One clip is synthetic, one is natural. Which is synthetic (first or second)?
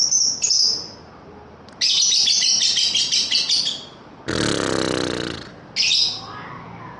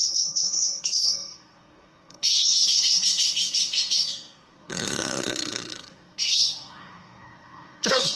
second